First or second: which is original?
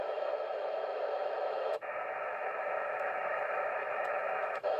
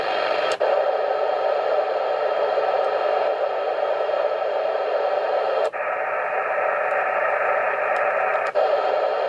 second